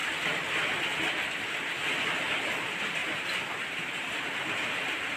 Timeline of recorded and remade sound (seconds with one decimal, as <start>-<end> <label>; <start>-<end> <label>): 0.0-2.6 recorded; 2.6-3.0 remade; 3.0-3.7 recorded; 3.7-5.2 remade

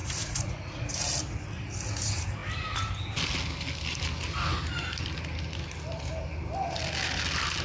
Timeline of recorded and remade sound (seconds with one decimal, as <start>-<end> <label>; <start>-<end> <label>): 0.0-0.9 remade; 0.9-7.6 recorded

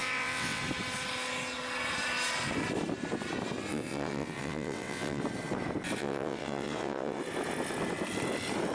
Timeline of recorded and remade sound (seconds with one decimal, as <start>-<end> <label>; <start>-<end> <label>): 0.0-0.6 remade; 0.6-3.7 recorded; 3.7-5.2 remade; 5.2-6.0 recorded; 6.0-7.2 remade; 7.2-8.7 recorded

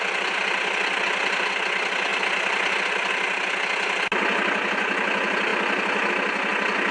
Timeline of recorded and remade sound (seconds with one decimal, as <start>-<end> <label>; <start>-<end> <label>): 0.0-6.9 recorded